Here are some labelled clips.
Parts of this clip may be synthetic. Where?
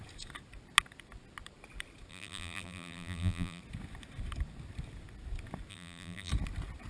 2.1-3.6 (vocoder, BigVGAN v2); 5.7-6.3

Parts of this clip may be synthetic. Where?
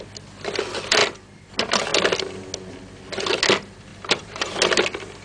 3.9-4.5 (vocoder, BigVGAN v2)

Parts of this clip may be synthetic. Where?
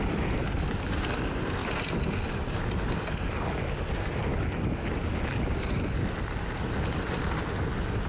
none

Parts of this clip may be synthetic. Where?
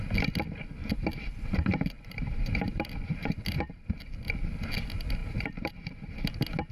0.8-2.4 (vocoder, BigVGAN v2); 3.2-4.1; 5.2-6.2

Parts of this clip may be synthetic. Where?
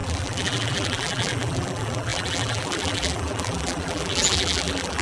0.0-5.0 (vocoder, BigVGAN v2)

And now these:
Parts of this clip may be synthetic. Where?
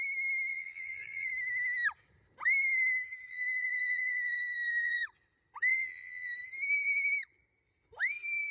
0.5-1.3 (vocoder, BigVGAN v2); 3.3-5.0; 5.7-6.3